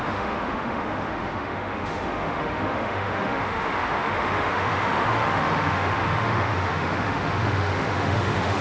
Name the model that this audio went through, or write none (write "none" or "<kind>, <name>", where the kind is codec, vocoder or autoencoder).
autoencoder, DAC-VAE